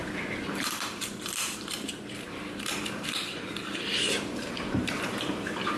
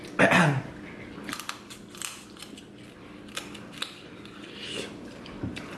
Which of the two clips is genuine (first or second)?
second